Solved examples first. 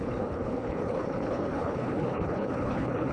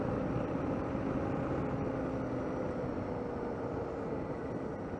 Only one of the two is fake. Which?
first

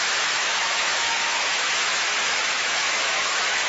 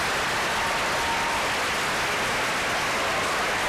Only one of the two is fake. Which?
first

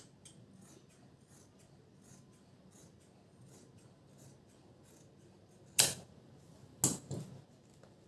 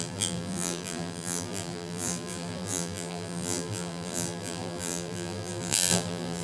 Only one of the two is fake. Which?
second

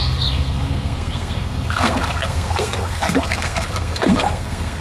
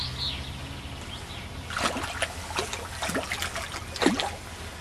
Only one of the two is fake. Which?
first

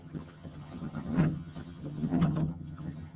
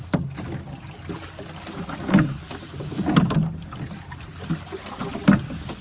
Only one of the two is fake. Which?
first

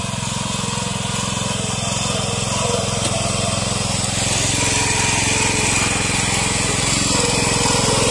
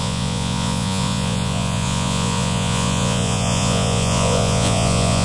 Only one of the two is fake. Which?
second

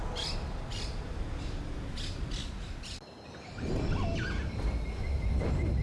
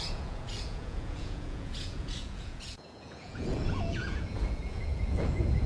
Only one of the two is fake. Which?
second